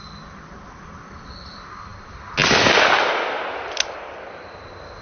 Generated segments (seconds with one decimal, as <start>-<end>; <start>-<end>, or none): none